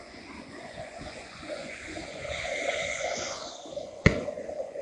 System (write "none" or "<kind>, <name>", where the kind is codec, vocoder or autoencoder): vocoder, Vocos